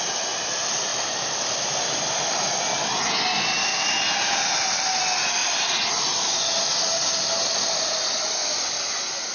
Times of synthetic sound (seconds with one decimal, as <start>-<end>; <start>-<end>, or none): 3.7-5.0; 5.4-5.9

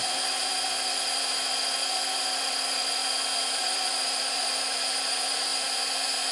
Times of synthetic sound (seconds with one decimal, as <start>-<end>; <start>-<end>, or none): 0.0-3.0; 3.6-5.5

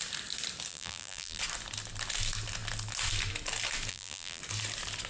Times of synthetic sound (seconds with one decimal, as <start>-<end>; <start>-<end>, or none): 0.7-1.4; 3.9-4.4

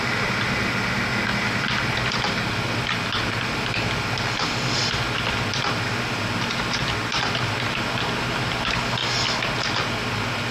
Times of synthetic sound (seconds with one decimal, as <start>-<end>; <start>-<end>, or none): none

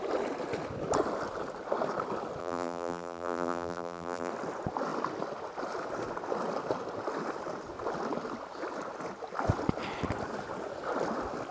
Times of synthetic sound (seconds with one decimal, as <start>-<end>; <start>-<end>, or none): 2.4-4.3

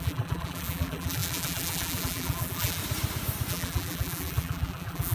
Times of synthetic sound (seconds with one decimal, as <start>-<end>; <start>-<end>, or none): 0.0-2.8; 3.5-5.1

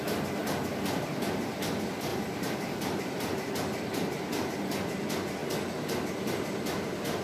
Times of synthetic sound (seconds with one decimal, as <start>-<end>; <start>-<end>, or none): 2.1-3.5